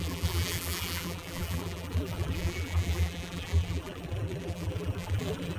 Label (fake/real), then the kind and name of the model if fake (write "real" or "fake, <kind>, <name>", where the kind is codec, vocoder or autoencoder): fake, vocoder, BigVGAN v2